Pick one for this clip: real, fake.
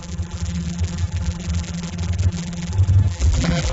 fake